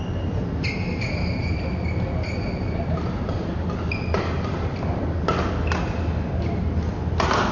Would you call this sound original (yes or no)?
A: yes